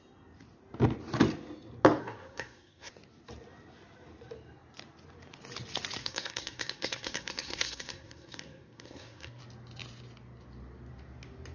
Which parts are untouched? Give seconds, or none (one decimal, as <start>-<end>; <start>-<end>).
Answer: 0.0-2.0; 2.9-6.0; 9.4-11.5